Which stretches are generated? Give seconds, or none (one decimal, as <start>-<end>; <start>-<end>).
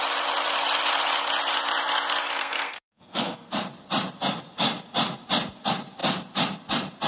2.4-3.5